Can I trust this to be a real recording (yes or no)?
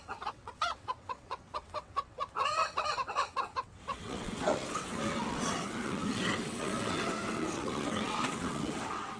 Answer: no